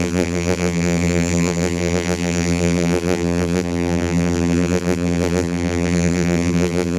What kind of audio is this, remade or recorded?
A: remade